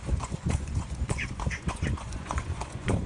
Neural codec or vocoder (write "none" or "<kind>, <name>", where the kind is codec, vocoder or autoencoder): vocoder, Vocos